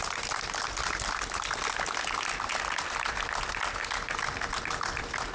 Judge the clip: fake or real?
real